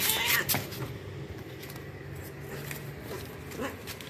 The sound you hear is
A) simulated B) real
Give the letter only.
B